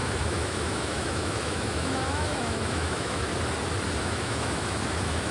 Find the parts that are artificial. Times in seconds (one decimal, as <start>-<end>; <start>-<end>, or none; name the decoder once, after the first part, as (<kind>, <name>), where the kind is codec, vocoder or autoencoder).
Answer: 0.0-3.3 (autoencoder, DAC-VAE); 4.0-5.3